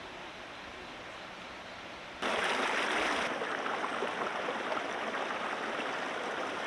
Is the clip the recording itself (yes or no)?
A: yes